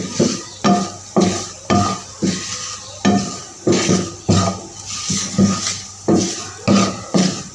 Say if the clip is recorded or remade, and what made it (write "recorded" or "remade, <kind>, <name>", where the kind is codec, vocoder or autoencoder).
recorded